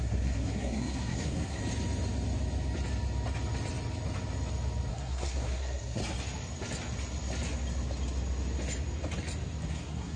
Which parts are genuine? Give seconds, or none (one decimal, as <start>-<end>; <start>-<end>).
1.6-4.9; 6.0-9.7